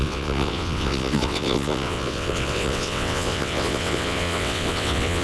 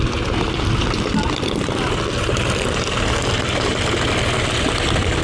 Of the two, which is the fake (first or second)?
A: first